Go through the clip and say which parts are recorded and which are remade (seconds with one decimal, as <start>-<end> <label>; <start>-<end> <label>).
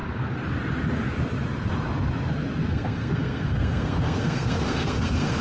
0.0-2.7 recorded; 2.7-5.4 remade